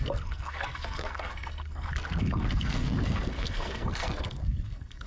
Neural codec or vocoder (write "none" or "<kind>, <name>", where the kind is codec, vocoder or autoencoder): codec, SNAC